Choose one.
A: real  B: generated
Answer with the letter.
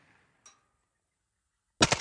A